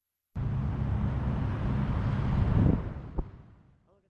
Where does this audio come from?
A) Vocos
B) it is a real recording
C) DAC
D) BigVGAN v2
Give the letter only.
B